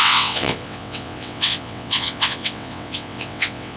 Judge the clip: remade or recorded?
remade